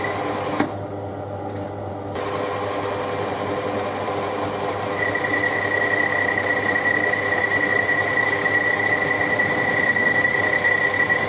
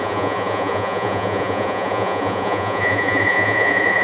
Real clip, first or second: first